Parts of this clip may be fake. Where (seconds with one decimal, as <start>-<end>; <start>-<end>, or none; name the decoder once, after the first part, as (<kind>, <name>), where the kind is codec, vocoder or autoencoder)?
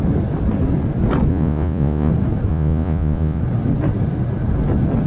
1.3-2.1 (vocoder, Vocos); 2.5-3.4